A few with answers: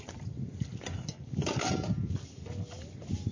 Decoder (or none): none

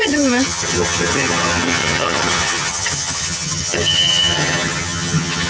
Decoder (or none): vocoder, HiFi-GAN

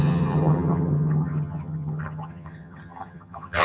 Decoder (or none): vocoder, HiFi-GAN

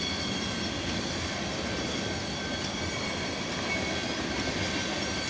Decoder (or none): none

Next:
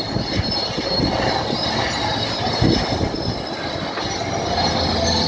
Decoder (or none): none